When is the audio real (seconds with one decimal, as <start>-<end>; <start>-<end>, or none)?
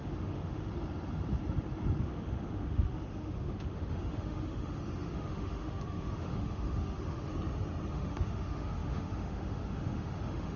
0.7-2.0; 7.3-7.9